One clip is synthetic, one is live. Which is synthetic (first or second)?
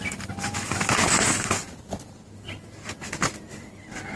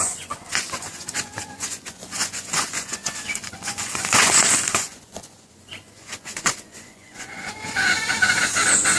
second